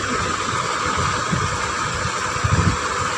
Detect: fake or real real